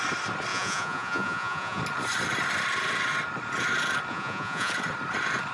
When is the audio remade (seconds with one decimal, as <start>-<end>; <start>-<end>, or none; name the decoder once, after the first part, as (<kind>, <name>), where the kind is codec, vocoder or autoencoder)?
0.5-1.8 (vocoder, Vocos); 4.1-4.7